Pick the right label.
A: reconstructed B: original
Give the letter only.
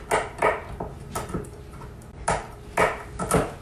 B